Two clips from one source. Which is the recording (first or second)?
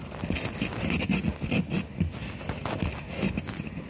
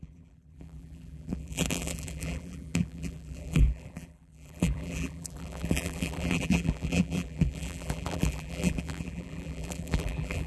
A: first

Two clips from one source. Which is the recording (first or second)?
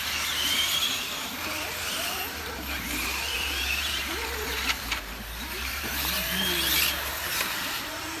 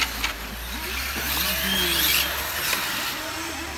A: second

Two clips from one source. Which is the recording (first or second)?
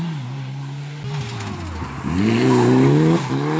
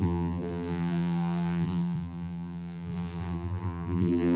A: first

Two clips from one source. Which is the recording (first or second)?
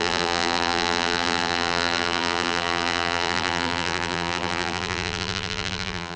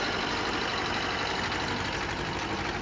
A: second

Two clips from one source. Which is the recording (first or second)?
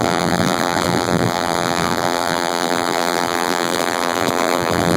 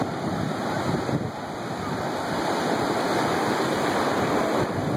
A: second